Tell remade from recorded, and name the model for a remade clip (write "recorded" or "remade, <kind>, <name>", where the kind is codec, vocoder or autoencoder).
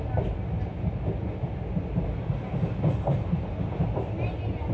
recorded